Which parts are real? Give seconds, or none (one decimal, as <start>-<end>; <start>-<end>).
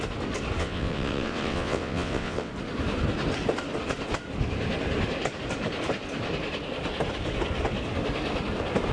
0.0-0.6; 2.5-8.9